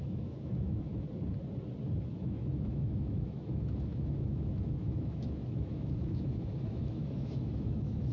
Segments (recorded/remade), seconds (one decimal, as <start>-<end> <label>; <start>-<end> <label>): 0.0-0.9 remade; 0.9-2.1 recorded; 2.1-8.1 remade